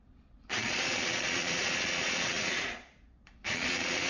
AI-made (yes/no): yes